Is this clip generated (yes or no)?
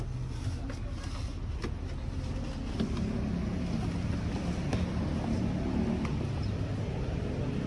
no